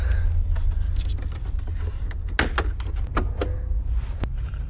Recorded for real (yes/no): yes